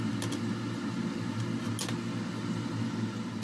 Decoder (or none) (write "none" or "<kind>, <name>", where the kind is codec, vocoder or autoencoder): none